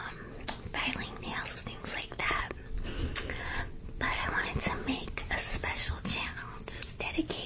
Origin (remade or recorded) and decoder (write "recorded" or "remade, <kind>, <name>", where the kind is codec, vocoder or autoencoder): recorded